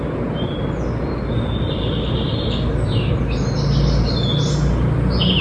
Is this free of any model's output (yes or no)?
yes